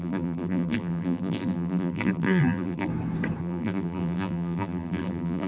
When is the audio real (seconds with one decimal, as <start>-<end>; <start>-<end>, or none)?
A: 2.9-3.4